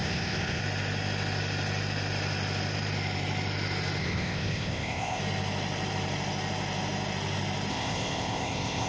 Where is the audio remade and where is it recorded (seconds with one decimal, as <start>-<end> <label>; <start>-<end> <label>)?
0.0-0.6 remade; 0.6-4.0 recorded; 4.0-5.2 remade; 5.2-7.7 recorded; 7.7-8.9 remade